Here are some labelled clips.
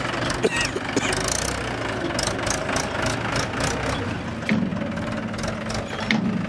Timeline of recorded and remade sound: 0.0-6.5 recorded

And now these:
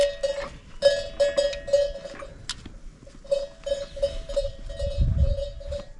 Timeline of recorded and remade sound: 0.0-6.0 recorded